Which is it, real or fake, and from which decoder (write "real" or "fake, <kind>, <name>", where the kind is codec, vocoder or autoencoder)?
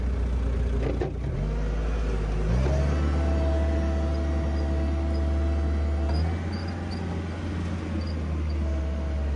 real